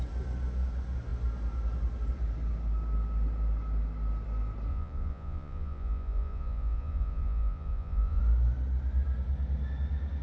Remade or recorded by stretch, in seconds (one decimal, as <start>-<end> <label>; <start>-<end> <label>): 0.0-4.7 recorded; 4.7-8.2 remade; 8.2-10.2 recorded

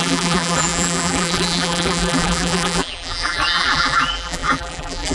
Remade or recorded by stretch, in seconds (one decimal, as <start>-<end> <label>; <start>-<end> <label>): 0.0-5.1 remade

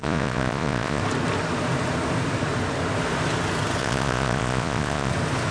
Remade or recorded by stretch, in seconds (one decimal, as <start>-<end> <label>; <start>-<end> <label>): 0.0-1.0 remade; 1.0-3.8 recorded; 3.8-5.1 remade; 5.1-5.5 recorded

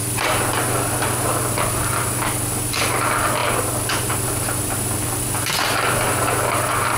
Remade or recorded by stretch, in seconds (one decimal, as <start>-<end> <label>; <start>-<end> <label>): 0.0-7.0 recorded

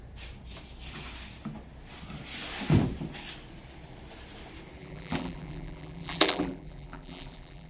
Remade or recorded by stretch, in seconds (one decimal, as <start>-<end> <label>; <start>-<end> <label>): 0.0-4.8 recorded; 4.8-7.7 remade

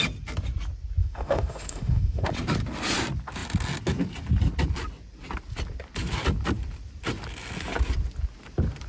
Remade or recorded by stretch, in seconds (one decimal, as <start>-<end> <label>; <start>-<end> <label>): 0.0-1.0 recorded; 1.0-2.3 remade; 2.3-8.9 recorded

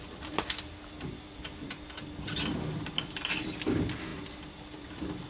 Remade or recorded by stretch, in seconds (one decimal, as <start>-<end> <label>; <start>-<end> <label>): 0.0-5.3 recorded